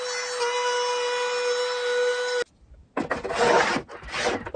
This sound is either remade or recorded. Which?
recorded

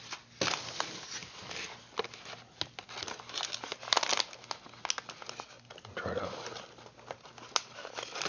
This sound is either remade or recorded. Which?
recorded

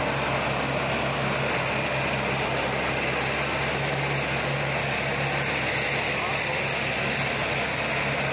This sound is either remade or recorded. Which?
recorded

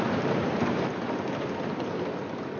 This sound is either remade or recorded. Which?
recorded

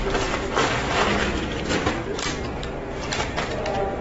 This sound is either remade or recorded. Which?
recorded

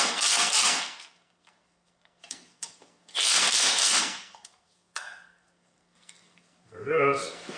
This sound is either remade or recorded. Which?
remade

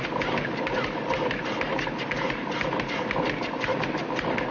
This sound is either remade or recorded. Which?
recorded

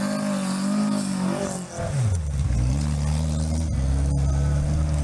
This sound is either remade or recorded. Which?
recorded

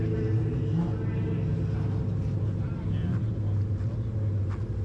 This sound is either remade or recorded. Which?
recorded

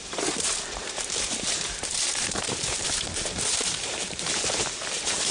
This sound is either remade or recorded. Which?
remade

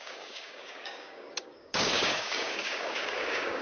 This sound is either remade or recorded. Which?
remade